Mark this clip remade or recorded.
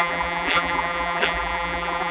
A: remade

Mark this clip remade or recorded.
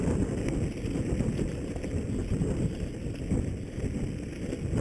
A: recorded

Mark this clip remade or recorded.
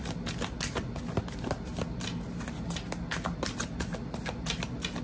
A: recorded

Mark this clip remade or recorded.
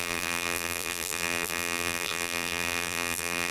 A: remade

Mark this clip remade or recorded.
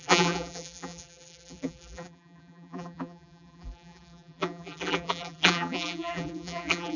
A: remade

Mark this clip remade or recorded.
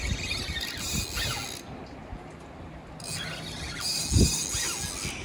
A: recorded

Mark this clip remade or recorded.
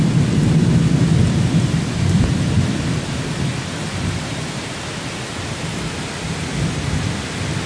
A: recorded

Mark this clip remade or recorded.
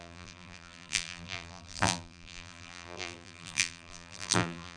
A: remade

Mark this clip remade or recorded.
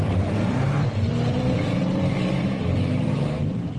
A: remade